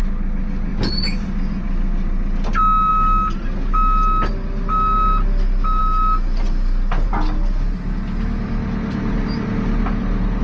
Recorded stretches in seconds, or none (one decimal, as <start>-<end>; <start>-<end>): 0.0-10.4